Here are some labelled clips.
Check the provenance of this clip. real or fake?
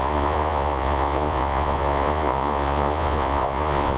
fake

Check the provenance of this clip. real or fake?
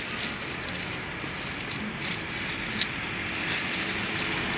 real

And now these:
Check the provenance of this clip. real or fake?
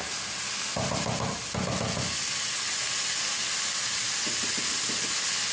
real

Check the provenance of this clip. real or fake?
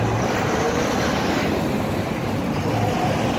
real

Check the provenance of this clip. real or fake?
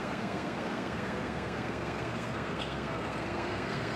fake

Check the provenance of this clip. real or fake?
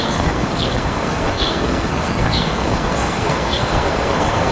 fake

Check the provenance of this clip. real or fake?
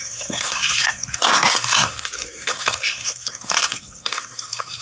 fake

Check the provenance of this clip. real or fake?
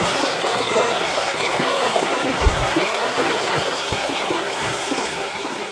fake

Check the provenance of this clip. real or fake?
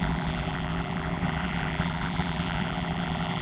fake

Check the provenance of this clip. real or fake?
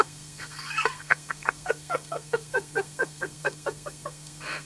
fake